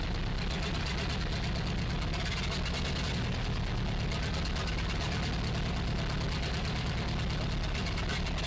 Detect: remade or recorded recorded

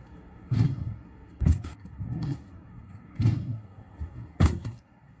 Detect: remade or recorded remade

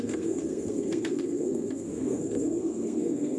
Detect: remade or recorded remade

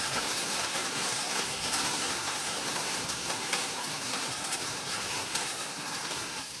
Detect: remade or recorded remade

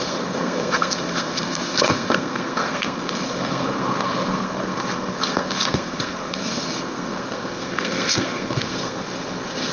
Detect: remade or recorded remade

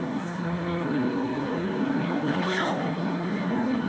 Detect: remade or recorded remade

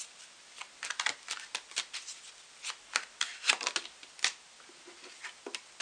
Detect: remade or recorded recorded